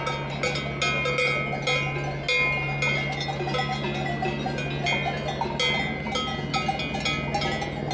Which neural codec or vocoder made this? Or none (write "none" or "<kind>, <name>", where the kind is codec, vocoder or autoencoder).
none